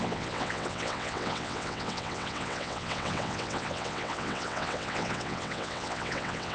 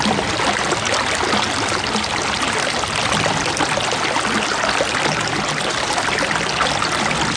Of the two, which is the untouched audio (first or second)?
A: second